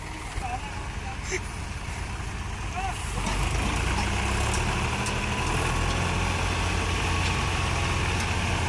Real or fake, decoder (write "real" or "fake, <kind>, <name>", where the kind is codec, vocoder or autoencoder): real